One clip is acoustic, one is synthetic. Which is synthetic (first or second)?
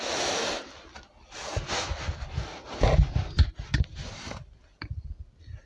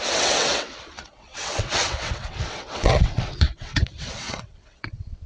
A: second